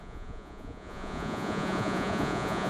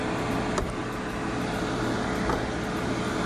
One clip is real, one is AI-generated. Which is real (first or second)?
second